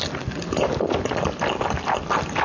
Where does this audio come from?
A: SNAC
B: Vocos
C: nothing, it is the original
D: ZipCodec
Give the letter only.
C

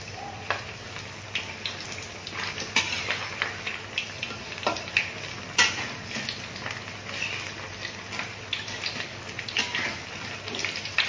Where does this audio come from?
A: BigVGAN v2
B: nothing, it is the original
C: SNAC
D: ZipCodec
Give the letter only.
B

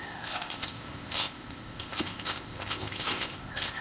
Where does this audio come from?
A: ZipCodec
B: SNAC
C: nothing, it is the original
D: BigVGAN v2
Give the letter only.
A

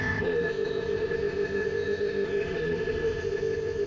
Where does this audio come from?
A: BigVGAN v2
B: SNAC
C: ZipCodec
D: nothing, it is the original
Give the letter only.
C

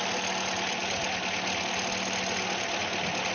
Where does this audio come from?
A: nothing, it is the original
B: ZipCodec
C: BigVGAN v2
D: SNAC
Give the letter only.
A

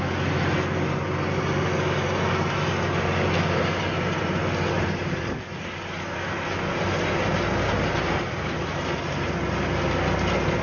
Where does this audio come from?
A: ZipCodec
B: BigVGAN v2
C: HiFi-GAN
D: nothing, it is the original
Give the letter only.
D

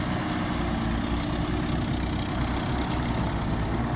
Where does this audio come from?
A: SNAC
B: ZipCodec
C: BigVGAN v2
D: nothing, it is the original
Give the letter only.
D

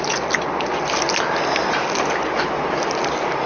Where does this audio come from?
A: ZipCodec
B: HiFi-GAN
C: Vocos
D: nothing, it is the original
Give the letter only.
D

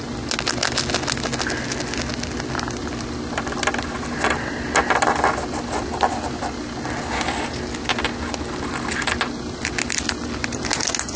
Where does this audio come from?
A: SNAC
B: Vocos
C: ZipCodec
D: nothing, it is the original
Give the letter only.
D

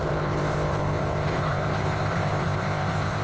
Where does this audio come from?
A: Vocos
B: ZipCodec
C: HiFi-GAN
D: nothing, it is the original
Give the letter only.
B